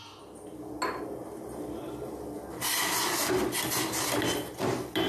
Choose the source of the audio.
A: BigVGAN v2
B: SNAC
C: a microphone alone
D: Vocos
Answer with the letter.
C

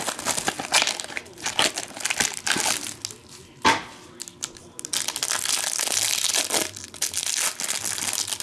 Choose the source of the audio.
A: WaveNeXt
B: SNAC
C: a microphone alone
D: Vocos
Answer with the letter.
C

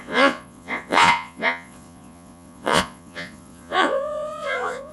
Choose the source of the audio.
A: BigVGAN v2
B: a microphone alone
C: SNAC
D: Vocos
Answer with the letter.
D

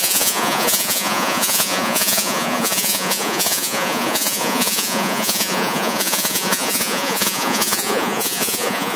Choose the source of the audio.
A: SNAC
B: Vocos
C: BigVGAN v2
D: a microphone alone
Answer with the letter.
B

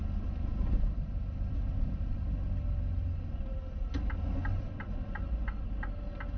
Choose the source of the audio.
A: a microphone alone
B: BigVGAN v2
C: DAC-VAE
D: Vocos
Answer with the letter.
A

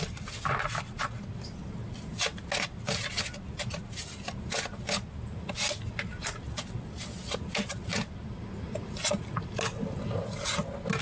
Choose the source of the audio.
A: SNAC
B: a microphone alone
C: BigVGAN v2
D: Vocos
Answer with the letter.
B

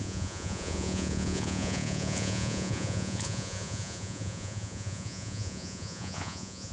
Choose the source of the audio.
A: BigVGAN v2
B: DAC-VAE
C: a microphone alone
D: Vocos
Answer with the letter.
D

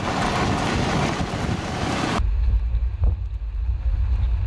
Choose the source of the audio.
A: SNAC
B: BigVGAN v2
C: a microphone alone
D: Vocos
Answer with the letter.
C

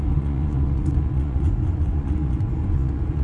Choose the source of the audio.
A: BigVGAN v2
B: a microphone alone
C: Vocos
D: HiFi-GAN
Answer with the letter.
C